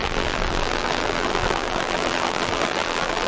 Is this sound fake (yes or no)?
yes